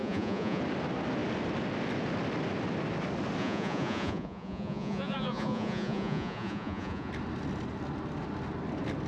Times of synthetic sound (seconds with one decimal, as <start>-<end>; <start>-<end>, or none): 0.0-0.6; 3.4-7.1